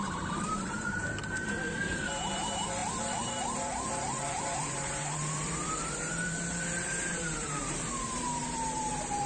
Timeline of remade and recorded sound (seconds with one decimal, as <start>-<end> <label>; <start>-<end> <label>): 0.0-9.3 remade